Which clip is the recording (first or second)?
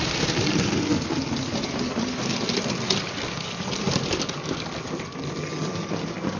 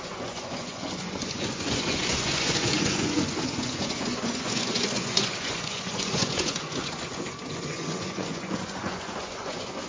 first